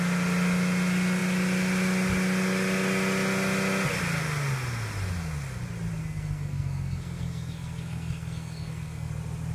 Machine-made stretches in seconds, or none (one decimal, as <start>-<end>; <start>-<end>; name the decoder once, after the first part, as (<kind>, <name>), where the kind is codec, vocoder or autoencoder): 6.0-9.1 (codec, SNAC)